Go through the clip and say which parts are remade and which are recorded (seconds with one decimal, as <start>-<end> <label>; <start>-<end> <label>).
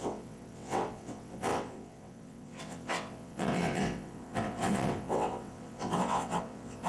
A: 0.0-6.9 remade